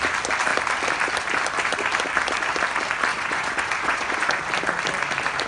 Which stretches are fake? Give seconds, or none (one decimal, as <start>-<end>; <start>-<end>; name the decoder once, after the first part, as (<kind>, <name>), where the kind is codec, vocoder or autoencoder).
3.1-4.4 (vocoder, Vocos)

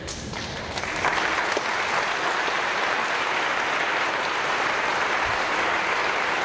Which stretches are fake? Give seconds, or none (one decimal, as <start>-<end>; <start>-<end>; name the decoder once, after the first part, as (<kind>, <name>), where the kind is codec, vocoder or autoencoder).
none

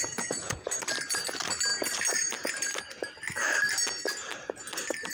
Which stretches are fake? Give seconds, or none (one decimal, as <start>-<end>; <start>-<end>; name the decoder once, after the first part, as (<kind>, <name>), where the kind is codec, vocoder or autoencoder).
0.0-0.7 (vocoder, Vocos)

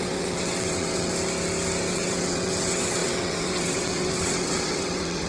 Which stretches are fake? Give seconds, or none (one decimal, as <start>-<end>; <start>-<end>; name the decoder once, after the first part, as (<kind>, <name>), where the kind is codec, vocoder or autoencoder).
0.0-1.1 (vocoder, WaveNeXt); 1.9-5.3

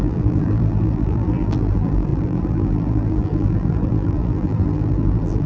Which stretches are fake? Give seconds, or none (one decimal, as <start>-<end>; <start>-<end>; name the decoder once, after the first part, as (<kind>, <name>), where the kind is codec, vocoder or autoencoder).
0.0-5.5 (vocoder, BigVGAN v2)